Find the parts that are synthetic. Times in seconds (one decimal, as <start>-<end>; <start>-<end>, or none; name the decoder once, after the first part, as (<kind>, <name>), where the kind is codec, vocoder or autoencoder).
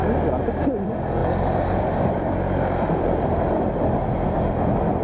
1.2-3.8 (vocoder, BigVGAN v2)